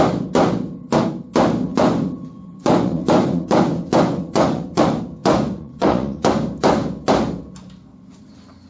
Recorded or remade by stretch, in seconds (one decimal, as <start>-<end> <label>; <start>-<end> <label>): 0.0-1.7 recorded; 1.7-4.8 remade; 4.8-5.2 recorded; 5.2-6.3 remade; 6.3-8.7 recorded